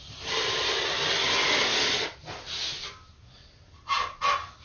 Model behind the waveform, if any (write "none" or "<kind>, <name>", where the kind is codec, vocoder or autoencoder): none